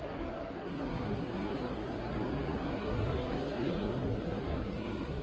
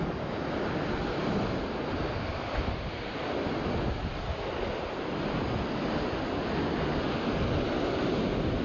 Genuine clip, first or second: second